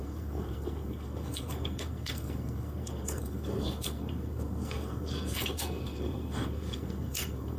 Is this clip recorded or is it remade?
remade